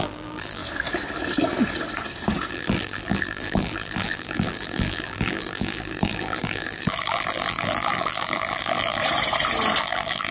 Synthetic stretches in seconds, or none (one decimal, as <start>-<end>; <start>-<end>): 0.0-0.6; 2.5-9.0; 9.8-10.3